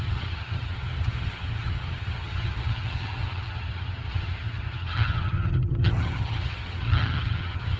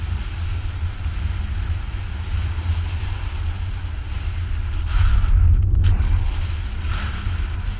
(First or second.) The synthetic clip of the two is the first